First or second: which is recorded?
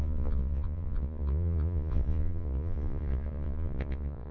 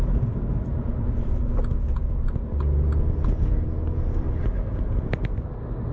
second